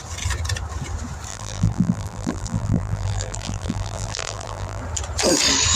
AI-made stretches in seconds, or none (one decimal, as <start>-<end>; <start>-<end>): 1.3-4.8